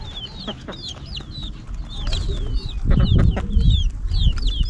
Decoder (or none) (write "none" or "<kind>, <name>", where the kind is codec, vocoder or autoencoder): none